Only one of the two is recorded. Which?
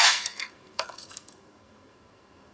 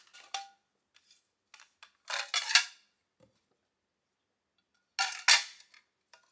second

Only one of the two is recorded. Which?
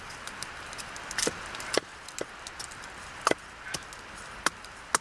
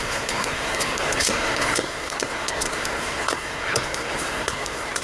first